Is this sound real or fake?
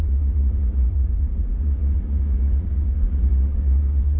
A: fake